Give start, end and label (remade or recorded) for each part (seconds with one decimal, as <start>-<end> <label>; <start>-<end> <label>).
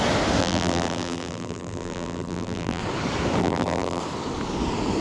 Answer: 0.0-0.4 recorded; 0.4-2.8 remade; 2.8-3.4 recorded; 3.4-4.0 remade; 4.0-5.0 recorded